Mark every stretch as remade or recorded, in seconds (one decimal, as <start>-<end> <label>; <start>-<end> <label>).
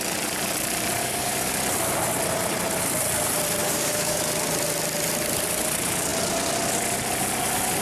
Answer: 0.0-1.0 recorded; 1.0-1.5 remade; 1.5-3.6 recorded; 3.6-4.2 remade; 4.2-7.8 recorded